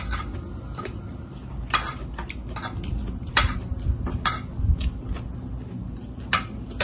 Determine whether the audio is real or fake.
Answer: real